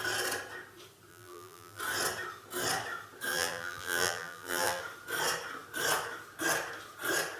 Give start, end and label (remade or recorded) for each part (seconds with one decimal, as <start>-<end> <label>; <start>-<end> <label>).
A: 0.0-1.1 recorded; 1.1-1.8 remade; 1.8-3.3 recorded; 3.3-4.8 remade; 4.8-7.4 recorded